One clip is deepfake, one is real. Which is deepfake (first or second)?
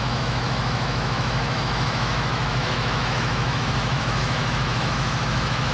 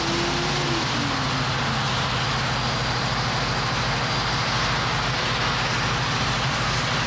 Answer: first